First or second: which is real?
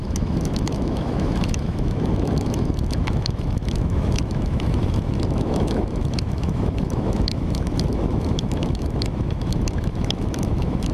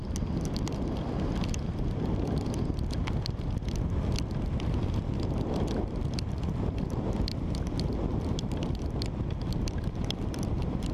second